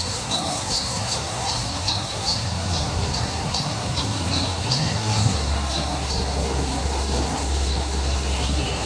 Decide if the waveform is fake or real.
fake